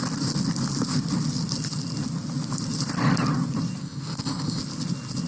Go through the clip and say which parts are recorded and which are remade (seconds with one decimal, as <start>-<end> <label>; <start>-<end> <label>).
0.0-3.8 recorded; 3.8-4.6 remade; 4.6-5.3 recorded